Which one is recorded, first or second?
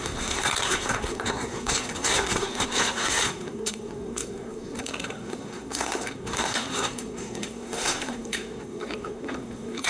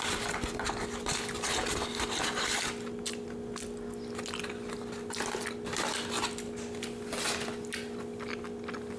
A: second